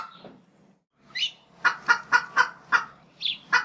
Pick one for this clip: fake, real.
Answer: real